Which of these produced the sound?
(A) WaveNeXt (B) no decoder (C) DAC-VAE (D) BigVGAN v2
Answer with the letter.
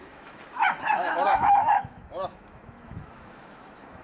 C